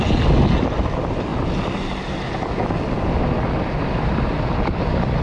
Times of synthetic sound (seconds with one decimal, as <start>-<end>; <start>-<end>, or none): none